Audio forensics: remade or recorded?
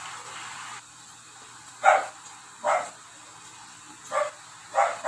recorded